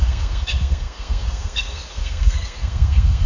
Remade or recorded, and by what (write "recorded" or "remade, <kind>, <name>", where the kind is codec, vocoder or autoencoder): remade, codec, SNAC